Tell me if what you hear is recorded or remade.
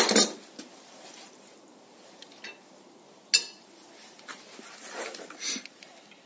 recorded